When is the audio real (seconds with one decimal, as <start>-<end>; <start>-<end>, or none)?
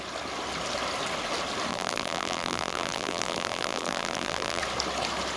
0.0-1.7; 4.6-5.4